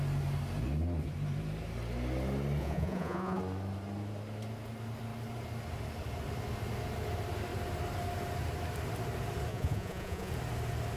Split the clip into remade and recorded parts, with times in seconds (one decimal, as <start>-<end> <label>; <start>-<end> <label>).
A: 0.0-2.6 recorded; 2.6-3.4 remade; 3.4-9.5 recorded; 9.5-10.3 remade; 10.3-11.0 recorded